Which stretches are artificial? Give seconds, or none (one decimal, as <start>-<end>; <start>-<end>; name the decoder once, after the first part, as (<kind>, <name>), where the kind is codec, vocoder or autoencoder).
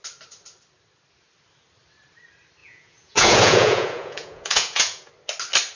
2.6-5.1 (vocoder, Vocos)